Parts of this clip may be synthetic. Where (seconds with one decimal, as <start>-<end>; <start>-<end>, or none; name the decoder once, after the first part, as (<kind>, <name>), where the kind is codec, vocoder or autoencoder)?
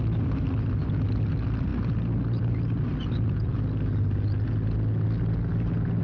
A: none